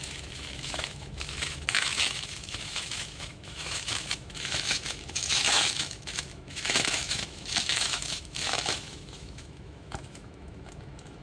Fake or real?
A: fake